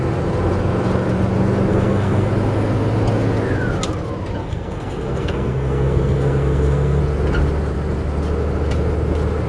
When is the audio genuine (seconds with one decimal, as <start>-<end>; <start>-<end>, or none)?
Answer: 0.0-1.7; 2.3-4.4; 7.0-9.5